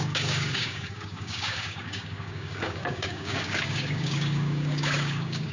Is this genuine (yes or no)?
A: no